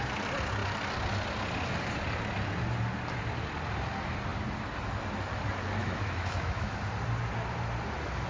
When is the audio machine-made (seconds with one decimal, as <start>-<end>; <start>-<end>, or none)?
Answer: 5.8-6.8

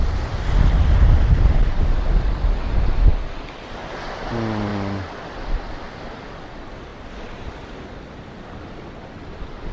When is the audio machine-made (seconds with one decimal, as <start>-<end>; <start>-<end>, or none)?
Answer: none

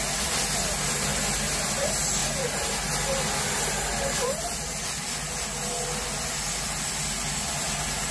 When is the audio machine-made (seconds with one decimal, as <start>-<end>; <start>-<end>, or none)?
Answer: none

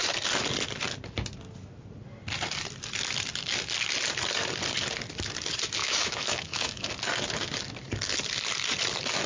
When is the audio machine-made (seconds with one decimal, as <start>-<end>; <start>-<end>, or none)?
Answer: 5.8-6.9

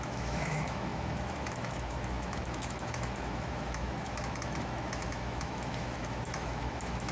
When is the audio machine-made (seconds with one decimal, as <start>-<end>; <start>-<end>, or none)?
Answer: 0.0-7.1

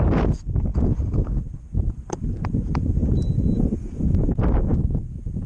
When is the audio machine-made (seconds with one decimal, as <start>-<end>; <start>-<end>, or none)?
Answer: 4.7-5.5

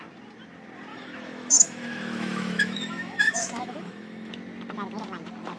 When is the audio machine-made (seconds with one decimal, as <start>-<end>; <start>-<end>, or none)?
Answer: 0.9-4.3

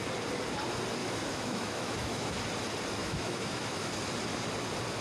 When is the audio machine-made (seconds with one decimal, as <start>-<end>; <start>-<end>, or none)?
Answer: 1.0-2.3; 3.0-3.9